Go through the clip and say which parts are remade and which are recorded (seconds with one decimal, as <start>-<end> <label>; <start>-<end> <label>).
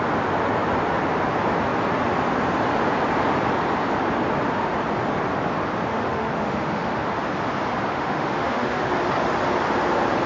0.0-5.9 recorded; 5.9-7.2 remade; 7.2-7.9 recorded; 7.9-8.9 remade; 8.9-10.3 recorded